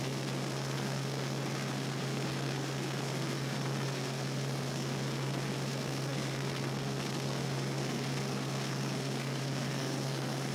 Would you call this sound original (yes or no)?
no